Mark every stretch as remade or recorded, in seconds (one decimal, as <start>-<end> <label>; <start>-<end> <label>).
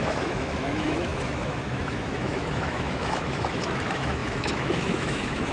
0.0-5.5 remade